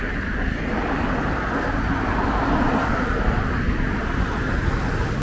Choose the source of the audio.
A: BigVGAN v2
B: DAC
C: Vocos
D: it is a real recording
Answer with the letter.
D